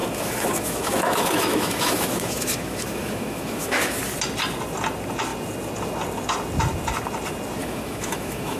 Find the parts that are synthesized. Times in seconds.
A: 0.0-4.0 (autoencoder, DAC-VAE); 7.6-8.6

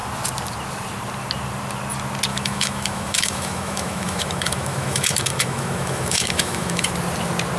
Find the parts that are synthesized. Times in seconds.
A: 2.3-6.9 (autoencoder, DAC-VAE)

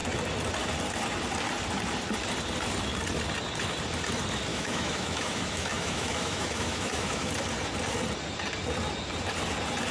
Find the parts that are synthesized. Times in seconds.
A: 4.5-7.3 (autoencoder, DAC-VAE)

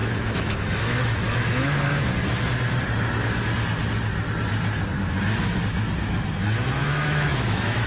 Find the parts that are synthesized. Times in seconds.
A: 0.0-2.0 (autoencoder, DAC-VAE); 6.8-7.9